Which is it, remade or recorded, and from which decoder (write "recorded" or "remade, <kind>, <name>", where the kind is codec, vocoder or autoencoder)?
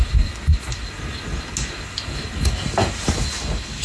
recorded